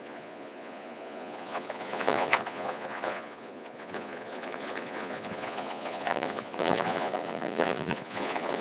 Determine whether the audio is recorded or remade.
remade